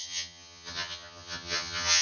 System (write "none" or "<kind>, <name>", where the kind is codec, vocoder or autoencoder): vocoder, HiFi-GAN